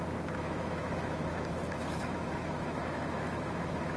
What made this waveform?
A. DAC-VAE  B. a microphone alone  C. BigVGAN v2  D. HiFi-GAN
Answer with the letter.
A